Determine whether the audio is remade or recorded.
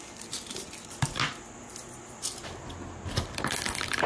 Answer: recorded